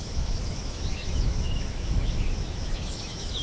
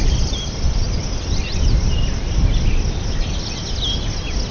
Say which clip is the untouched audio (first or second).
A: second